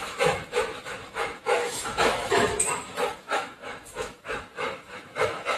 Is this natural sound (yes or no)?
no